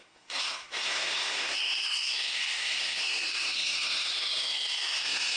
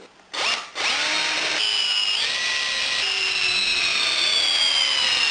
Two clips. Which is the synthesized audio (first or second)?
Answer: first